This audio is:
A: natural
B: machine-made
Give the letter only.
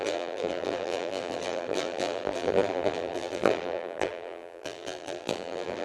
B